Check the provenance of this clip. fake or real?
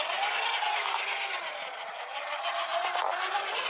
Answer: real